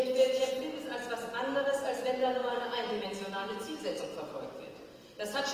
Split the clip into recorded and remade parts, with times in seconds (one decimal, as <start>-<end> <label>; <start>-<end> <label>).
0.0-2.4 recorded; 2.4-4.0 remade; 4.0-5.5 recorded